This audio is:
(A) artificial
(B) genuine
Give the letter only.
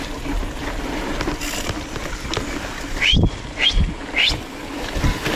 B